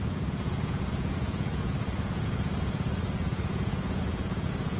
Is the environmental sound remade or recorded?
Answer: remade